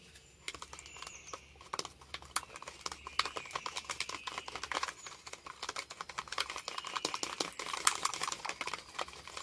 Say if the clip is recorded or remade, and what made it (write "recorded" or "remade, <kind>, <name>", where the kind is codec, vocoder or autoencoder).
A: recorded